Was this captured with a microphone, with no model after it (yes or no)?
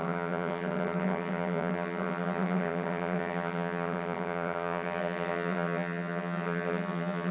no